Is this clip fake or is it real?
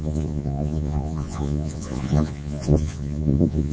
fake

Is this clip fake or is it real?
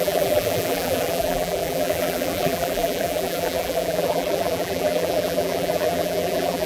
fake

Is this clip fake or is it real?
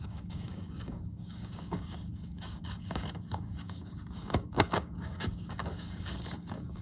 fake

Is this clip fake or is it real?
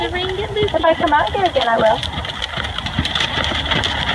real